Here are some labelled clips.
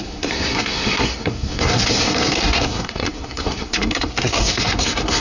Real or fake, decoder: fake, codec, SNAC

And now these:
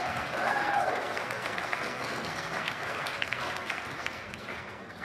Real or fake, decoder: fake, codec, SNAC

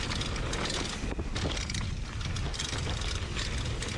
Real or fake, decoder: real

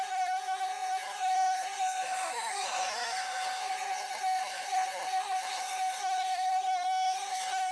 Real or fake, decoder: fake, codec, SNAC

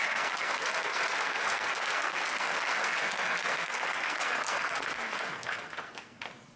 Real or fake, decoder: fake, codec, SNAC